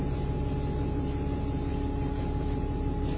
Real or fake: real